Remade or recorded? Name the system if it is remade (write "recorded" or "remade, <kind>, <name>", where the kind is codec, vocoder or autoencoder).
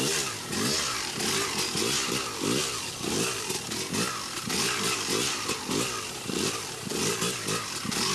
recorded